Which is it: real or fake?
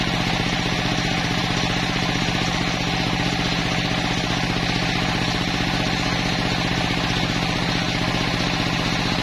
real